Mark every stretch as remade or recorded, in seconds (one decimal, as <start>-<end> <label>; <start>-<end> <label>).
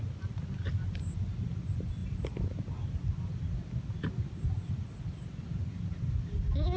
0.0-6.8 recorded